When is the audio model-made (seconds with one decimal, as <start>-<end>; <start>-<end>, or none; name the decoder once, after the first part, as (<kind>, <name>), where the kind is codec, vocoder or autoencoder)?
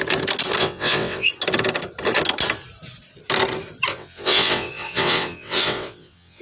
0.6-1.3 (vocoder, WaveNeXt); 3.9-6.4